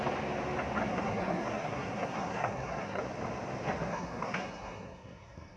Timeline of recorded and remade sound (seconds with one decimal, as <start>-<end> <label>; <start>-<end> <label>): 0.0-0.9 recorded; 0.9-3.0 remade; 3.0-3.9 recorded; 3.9-5.6 remade